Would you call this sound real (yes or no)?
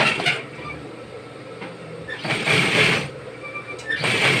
no